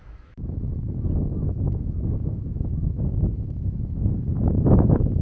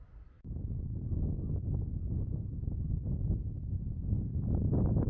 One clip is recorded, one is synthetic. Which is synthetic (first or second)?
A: first